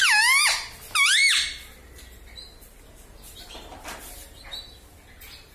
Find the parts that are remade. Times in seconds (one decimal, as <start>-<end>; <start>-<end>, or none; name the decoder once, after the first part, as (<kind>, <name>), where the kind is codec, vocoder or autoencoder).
none